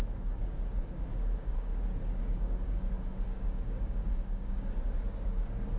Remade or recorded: remade